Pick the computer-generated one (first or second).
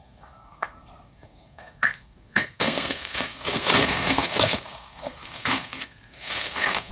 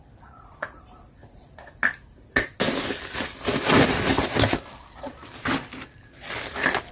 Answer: first